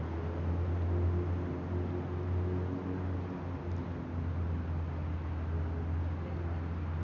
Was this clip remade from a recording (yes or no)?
no